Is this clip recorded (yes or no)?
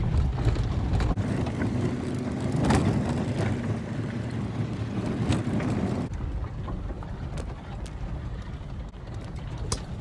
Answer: yes